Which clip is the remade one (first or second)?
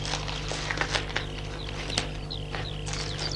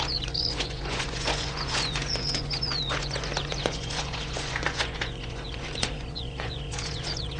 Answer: second